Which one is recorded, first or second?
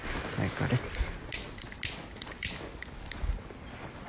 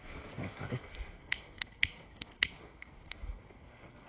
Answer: first